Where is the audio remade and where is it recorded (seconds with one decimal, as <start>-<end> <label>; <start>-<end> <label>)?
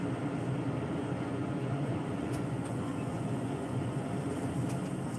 0.0-1.0 recorded; 1.0-4.1 remade; 4.1-5.2 recorded